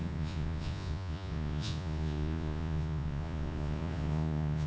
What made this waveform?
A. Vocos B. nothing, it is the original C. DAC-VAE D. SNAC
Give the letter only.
A